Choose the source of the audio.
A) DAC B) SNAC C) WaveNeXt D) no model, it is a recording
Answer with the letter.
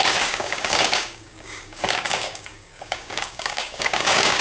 A